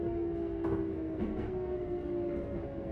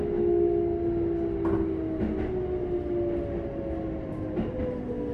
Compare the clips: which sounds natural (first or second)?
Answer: second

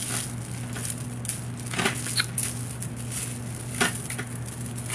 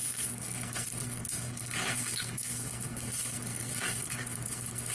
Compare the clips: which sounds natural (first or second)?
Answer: first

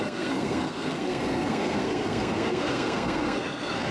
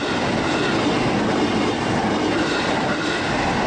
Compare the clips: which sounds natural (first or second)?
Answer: second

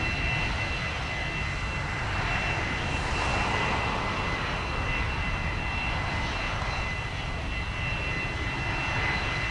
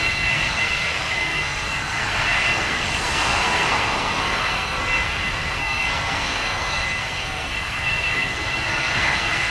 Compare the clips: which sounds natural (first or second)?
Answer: first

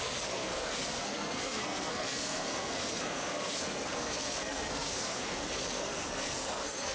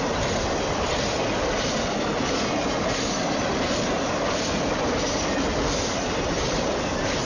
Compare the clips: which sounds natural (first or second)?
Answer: second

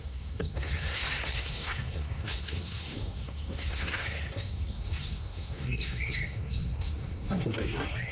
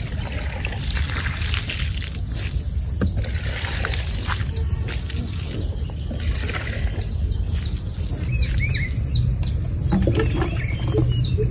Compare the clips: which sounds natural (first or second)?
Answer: second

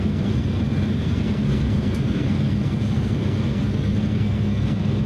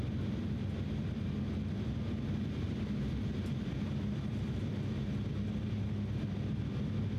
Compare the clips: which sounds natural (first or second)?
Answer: second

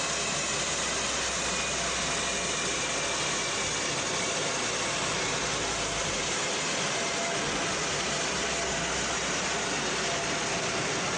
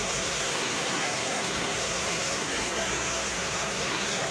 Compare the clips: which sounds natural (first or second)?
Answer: first